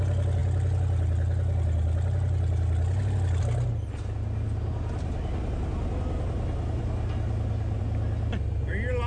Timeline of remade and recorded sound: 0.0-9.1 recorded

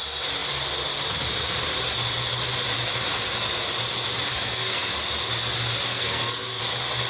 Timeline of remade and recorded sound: 0.0-4.3 recorded; 4.3-4.9 remade; 4.9-5.9 recorded; 5.9-6.6 remade; 6.6-7.1 recorded

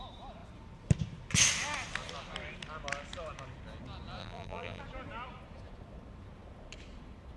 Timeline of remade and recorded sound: 0.0-4.2 recorded; 4.2-4.8 remade; 4.8-7.4 recorded

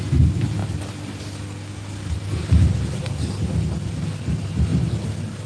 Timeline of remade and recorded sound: 0.0-5.5 recorded

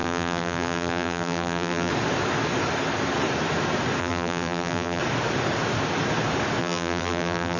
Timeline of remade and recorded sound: 0.0-1.9 remade; 1.9-4.0 recorded; 4.0-5.0 remade; 5.0-6.6 recorded; 6.6-7.6 remade